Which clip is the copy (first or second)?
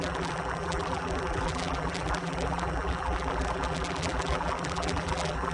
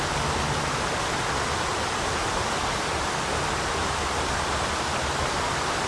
first